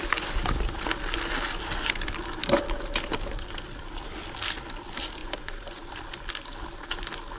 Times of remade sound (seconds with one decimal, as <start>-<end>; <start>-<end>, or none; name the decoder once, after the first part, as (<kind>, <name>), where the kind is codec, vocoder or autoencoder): 5.2-5.9 (vocoder, Vocos)